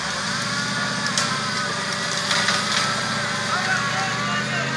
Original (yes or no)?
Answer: yes